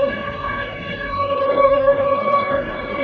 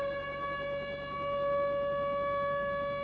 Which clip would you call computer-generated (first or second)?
first